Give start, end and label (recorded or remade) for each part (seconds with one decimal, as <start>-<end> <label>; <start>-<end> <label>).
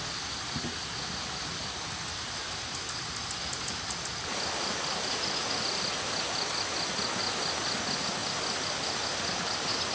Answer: 0.0-9.9 recorded